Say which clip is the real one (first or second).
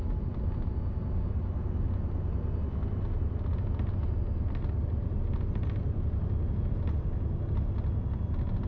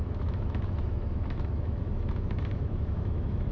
first